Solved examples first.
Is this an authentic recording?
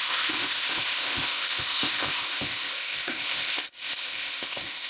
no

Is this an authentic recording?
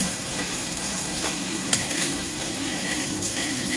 no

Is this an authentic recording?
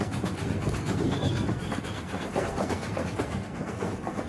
no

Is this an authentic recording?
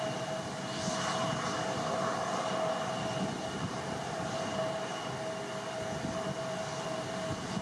yes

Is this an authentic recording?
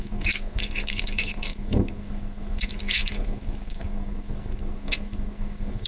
no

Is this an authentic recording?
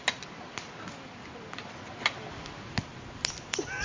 yes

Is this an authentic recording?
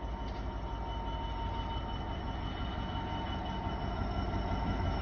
yes